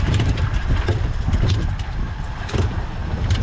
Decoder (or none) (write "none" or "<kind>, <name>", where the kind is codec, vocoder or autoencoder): none